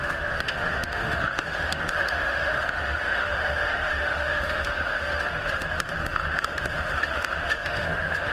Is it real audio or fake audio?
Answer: fake